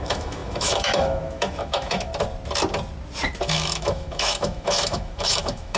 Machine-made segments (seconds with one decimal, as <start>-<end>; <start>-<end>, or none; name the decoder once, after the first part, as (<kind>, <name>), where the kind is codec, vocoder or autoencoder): 0.0-2.1 (autoencoder, DAC-VAE); 3.4-5.8